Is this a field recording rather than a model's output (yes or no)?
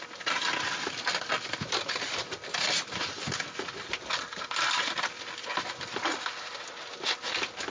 yes